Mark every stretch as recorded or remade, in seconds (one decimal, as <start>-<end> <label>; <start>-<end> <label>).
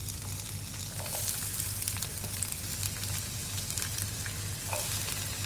0.0-5.5 recorded